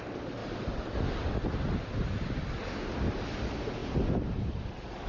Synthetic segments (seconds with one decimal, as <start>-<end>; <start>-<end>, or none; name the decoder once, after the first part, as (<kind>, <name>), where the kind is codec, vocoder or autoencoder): none